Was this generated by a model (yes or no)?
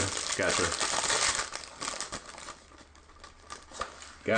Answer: no